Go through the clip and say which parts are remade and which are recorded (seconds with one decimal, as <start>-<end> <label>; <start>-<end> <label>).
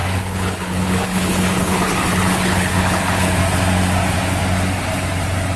0.0-3.4 remade; 3.4-5.6 recorded